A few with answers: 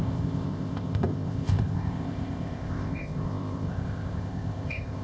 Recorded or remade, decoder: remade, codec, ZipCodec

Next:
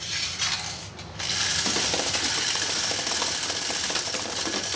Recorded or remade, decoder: recorded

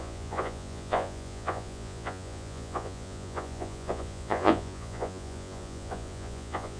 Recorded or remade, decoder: remade, vocoder, Vocos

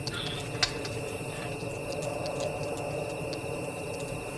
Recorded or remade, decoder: recorded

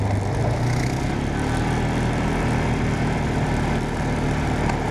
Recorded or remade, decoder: recorded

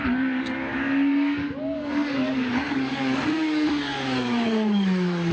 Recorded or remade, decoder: remade, codec, DAC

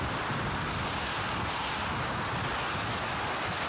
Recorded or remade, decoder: recorded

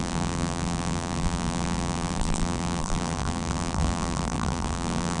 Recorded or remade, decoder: remade, vocoder, BigVGAN v2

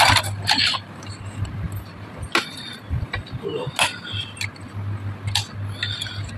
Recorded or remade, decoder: recorded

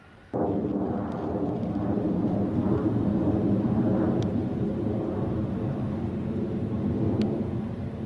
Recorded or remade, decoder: recorded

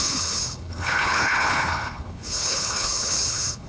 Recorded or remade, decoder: remade, codec, HILCodec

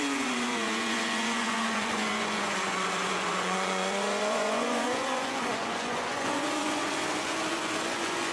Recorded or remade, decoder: remade, vocoder, Vocos